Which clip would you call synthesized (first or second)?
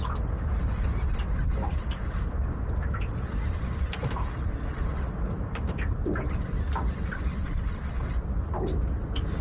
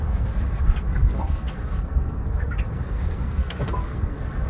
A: second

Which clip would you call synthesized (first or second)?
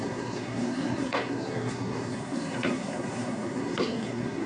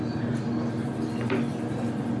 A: first